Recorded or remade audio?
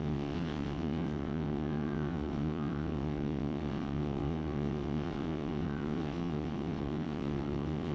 remade